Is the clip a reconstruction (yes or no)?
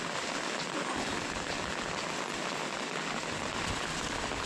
no